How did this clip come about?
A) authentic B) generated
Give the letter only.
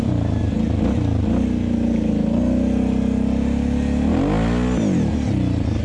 A